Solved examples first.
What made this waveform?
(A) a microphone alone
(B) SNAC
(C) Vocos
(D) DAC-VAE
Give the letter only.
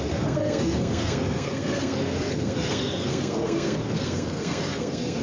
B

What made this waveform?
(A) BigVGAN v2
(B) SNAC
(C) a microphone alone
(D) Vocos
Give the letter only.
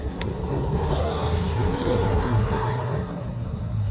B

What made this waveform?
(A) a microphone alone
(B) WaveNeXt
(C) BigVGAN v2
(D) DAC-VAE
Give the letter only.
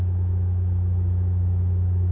D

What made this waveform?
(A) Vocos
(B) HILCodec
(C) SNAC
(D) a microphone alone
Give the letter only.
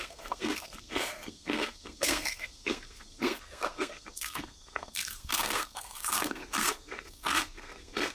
C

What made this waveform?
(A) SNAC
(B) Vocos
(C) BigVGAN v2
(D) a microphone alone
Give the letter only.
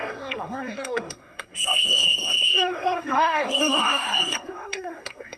A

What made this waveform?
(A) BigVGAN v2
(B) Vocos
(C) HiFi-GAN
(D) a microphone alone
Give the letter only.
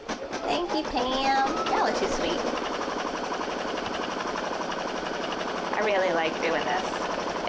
A